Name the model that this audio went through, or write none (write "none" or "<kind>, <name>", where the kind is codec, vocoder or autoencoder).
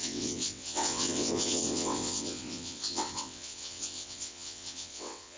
vocoder, WaveNeXt